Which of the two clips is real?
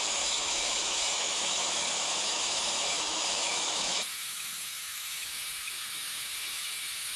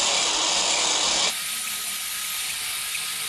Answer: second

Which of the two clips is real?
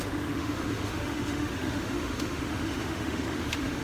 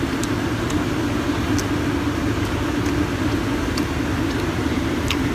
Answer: second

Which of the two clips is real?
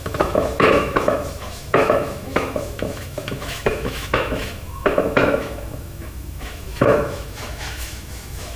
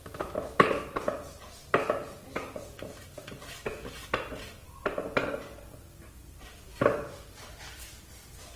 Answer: second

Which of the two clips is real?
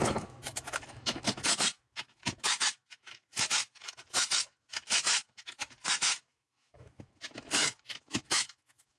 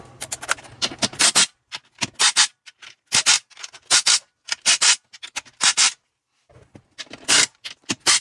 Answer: second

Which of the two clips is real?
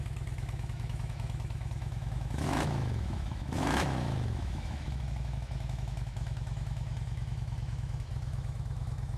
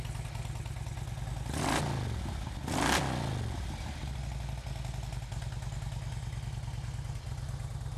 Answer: second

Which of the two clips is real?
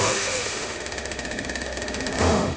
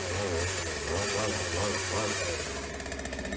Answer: second